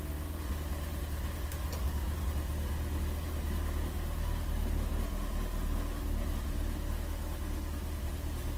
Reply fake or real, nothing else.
real